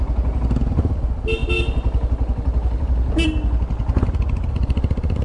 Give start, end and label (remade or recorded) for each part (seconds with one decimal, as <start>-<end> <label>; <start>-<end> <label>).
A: 0.0-5.2 recorded